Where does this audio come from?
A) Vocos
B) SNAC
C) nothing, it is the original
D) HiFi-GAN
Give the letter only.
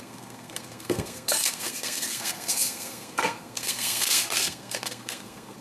B